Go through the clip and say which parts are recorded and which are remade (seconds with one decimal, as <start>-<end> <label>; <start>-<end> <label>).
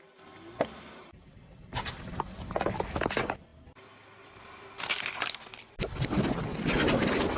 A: 0.0-7.4 recorded